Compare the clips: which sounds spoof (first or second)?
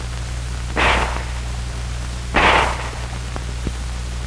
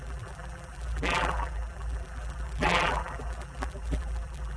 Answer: second